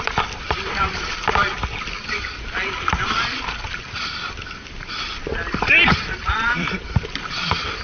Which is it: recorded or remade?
remade